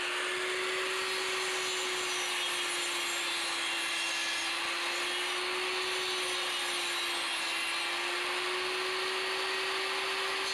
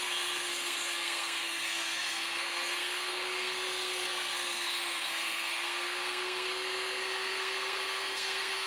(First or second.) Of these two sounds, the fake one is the second